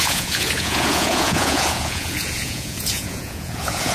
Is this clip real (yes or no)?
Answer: no